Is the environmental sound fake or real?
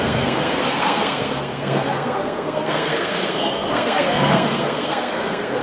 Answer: fake